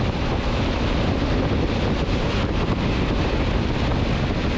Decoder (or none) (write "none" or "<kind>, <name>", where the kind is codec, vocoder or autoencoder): none